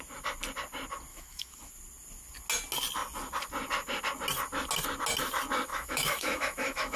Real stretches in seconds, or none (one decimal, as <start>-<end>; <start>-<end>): 0.0-1.1; 1.7-5.7